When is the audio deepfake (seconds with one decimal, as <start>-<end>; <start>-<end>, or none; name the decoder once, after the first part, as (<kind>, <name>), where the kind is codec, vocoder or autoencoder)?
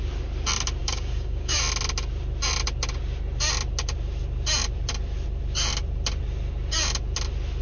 0.8-1.6 (codec, DAC)